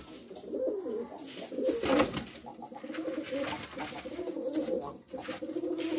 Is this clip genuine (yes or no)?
yes